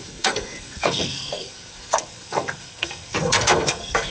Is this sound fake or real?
fake